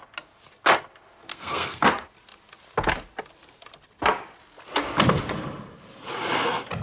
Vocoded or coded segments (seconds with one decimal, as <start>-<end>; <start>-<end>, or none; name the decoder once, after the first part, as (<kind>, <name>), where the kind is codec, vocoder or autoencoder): 1.3-1.9 (codec, SNAC)